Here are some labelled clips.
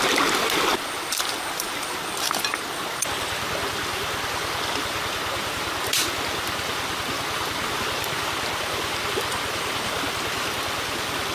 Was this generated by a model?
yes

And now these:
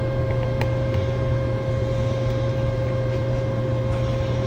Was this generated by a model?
yes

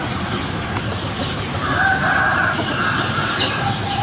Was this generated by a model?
yes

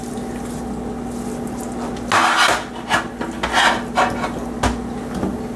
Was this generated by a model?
no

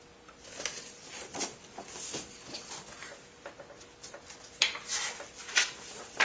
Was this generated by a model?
no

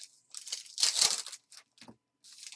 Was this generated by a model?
no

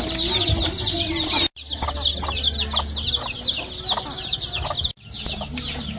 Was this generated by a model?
no